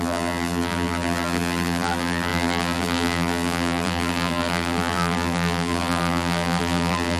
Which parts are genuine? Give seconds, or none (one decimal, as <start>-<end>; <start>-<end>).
none